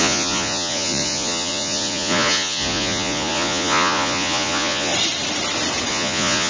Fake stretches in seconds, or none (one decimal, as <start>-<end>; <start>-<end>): 0.0-4.9; 5.9-6.5